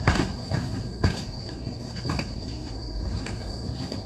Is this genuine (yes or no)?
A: no